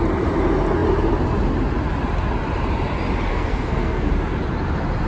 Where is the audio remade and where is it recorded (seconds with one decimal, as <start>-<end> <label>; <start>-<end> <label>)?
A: 0.0-3.3 recorded; 3.3-4.1 remade; 4.1-5.1 recorded